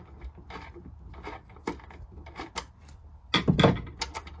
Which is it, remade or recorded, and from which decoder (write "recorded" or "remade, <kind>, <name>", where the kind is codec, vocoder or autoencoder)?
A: recorded